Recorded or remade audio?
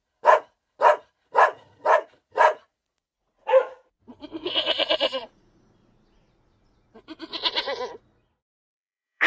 remade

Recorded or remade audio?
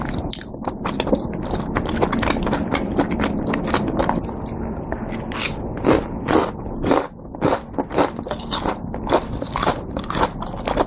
recorded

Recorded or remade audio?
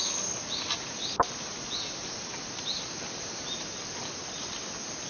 recorded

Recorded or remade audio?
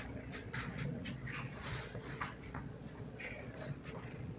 remade